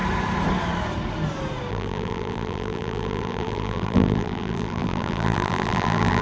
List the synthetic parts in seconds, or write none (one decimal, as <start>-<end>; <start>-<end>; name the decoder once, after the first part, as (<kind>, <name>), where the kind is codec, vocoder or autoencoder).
1.7-6.2 (vocoder, BigVGAN v2)